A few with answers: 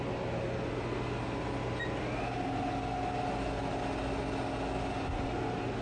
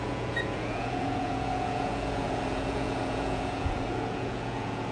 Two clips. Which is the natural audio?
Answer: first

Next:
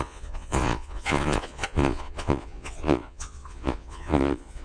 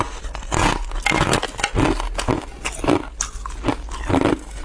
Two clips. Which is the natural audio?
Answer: second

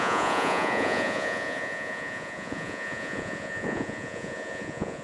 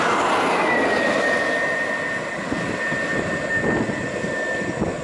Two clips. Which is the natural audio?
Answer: second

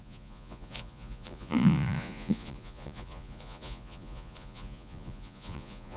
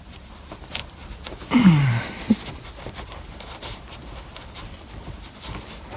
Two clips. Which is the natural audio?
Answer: second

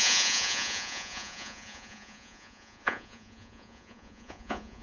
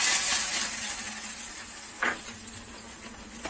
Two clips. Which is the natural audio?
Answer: second